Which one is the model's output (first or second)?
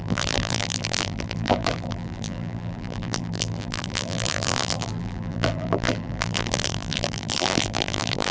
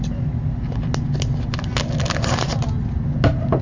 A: first